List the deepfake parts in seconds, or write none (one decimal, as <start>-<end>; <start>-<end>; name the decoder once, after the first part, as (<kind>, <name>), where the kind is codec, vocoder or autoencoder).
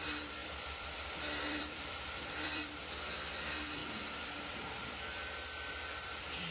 0.0-6.5 (vocoder, BigVGAN v2)